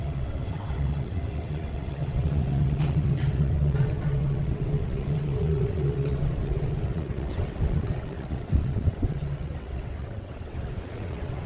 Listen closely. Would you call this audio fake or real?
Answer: fake